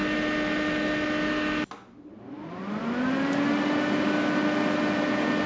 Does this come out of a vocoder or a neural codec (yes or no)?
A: no